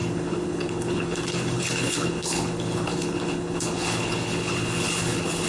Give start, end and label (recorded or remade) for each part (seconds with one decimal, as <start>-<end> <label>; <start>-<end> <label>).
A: 0.0-5.5 remade